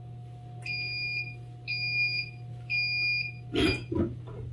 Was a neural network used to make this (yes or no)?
no